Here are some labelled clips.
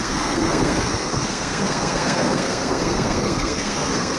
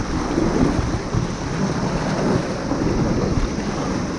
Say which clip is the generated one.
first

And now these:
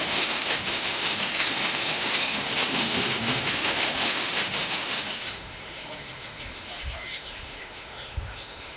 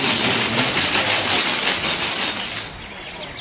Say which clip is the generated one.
first